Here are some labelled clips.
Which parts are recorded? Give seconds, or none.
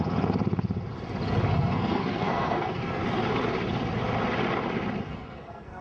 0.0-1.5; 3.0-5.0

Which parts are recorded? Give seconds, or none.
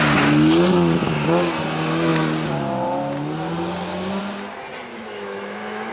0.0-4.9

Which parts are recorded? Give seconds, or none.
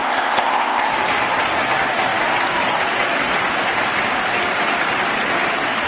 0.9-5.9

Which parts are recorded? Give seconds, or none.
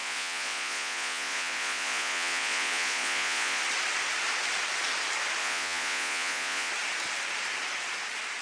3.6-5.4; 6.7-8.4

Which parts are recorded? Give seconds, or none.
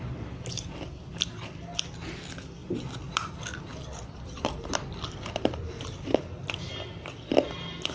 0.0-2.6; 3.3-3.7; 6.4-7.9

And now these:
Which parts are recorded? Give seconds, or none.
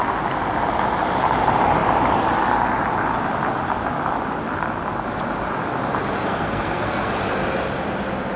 0.0-6.2; 7.1-8.4